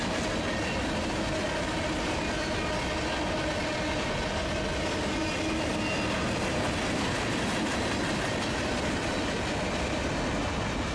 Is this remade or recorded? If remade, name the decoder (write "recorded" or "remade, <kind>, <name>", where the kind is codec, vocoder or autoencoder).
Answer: recorded